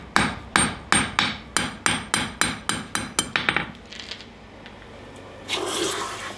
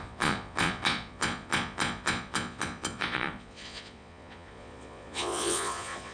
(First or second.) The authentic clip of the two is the first